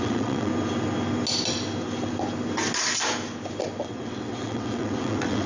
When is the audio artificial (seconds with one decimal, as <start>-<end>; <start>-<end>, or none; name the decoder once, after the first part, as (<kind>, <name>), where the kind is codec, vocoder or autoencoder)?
0.0-0.5 (vocoder, WaveNeXt); 3.8-5.5